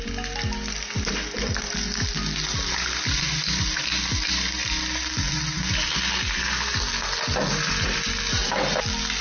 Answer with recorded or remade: recorded